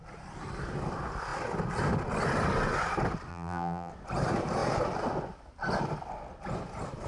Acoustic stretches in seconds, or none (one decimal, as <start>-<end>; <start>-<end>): 0.0-3.3; 3.9-7.1